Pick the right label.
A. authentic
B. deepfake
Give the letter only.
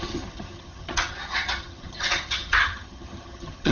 B